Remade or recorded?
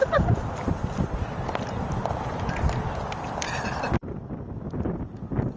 recorded